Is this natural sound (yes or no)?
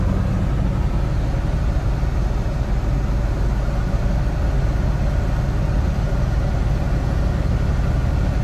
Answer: yes